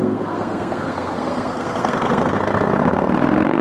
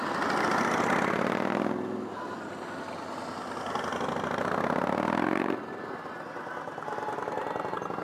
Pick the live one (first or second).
second